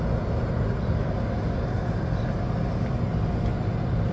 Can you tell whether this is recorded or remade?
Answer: recorded